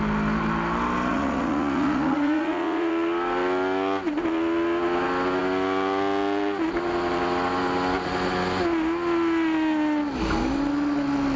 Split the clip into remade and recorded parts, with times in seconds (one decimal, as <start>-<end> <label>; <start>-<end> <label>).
0.0-1.1 recorded; 1.1-2.9 remade; 2.9-11.4 recorded